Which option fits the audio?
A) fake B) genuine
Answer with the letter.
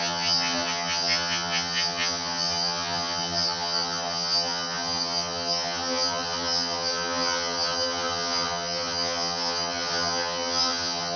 A